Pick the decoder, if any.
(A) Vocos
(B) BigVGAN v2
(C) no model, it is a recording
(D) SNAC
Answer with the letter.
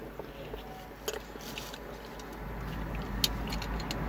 C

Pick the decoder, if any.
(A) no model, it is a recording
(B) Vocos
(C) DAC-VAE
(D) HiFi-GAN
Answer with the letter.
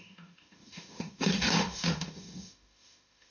C